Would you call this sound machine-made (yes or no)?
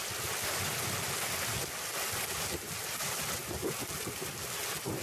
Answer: no